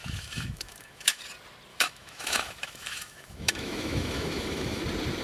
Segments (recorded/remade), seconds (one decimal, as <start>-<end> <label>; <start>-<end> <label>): 0.0-1.2 remade; 1.2-1.7 recorded; 1.7-4.8 remade; 4.8-5.2 recorded